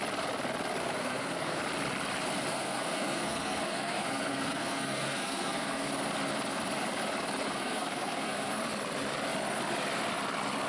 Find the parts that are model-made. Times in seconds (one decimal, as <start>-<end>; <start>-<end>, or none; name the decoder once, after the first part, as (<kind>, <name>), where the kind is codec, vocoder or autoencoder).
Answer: 0.8-1.6 (codec, SNAC); 2.5-5.9; 7.4-8.6